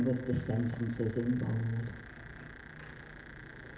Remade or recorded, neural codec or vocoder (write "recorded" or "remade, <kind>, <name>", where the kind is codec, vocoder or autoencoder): recorded